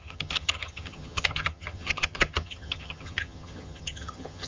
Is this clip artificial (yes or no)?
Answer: yes